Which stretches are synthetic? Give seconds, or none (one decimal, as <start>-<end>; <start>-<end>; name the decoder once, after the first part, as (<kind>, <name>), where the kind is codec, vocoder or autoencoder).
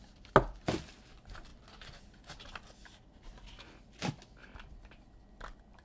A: none